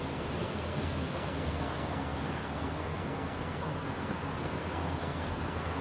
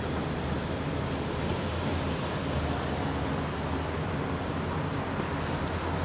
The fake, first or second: first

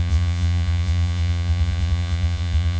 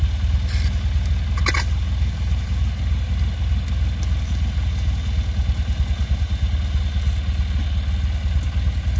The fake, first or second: first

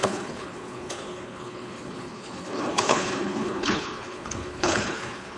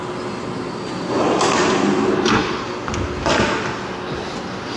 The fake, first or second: first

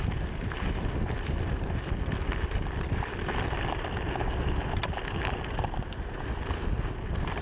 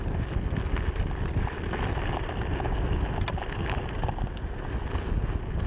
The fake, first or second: first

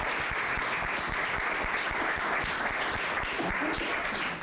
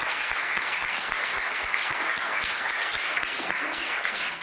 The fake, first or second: second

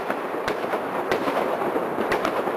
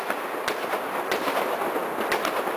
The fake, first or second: first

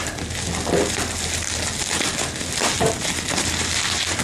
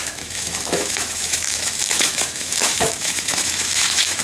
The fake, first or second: second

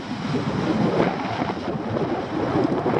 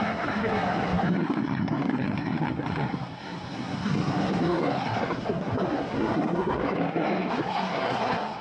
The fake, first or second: second